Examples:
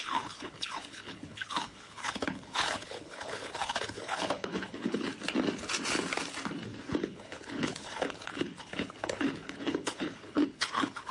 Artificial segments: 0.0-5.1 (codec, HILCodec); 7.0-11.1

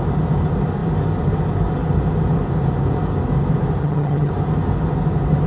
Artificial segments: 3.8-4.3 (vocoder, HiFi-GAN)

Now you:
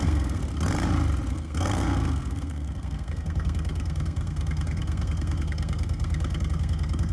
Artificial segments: 0.0-0.4 (codec, SNAC); 1.3-7.1

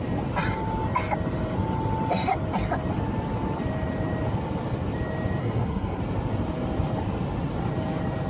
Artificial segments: 5.4-6.0 (codec, SNAC)

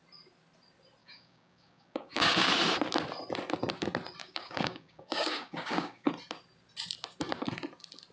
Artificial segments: 1.0-2.5 (codec, DAC); 4.2-6.1